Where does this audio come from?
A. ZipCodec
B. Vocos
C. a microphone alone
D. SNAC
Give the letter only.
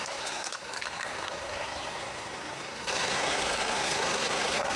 D